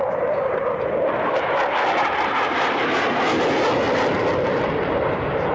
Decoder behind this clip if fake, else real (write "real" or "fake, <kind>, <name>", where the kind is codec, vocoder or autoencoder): real